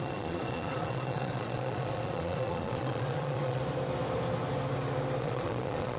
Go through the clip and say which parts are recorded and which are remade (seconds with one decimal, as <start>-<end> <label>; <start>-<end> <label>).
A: 0.0-3.6 remade; 3.6-5.2 recorded; 5.2-6.0 remade